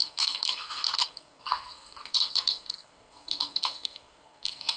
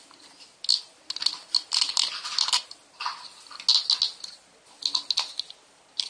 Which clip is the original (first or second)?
second